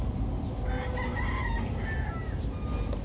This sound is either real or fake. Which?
real